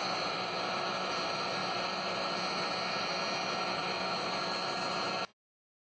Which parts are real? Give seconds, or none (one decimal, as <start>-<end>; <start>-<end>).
0.0-6.0